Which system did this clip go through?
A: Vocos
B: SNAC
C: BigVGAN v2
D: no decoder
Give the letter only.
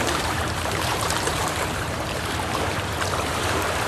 C